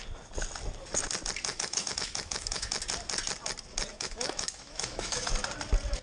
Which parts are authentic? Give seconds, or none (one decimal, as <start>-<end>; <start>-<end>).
0.0-1.5; 2.7-3.9; 5.3-6.0